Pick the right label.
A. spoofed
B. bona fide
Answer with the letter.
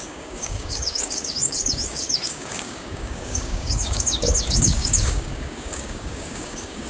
A